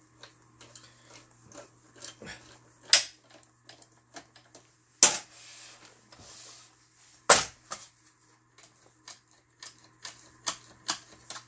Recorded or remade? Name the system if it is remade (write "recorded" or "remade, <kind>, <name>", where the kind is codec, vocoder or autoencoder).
recorded